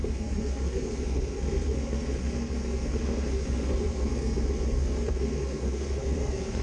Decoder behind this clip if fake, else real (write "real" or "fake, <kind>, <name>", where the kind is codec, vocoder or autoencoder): fake, codec, SNAC